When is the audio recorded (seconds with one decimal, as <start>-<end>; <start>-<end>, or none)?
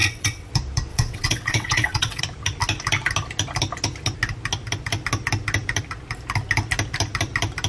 0.5-0.9; 2.2-7.7